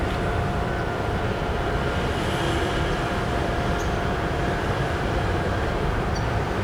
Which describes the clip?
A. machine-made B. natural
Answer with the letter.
A